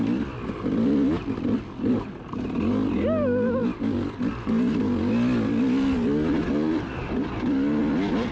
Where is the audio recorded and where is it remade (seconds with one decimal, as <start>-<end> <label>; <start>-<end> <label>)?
0.0-8.3 recorded